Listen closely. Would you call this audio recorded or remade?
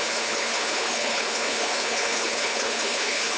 remade